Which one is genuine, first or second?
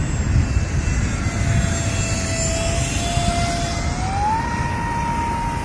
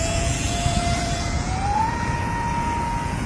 first